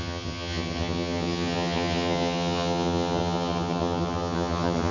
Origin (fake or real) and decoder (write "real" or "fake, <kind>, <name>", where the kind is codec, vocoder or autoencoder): fake, vocoder, HiFi-GAN